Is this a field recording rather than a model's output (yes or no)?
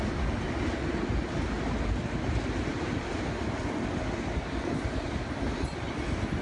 yes